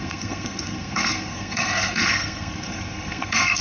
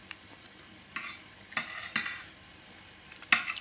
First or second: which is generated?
first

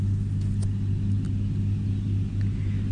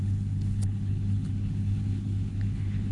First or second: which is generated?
second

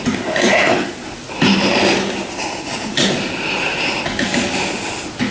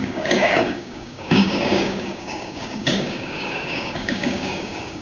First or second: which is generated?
second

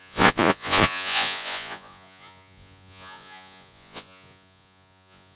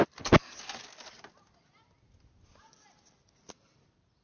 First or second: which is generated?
first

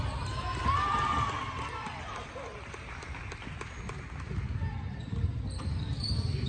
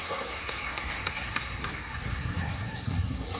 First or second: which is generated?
second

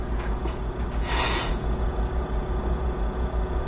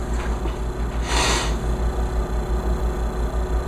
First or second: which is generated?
first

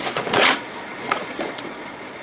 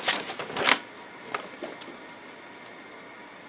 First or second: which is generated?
first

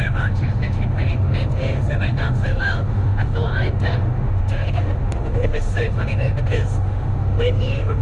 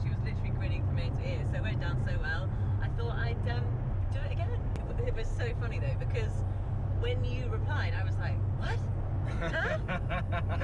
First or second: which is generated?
first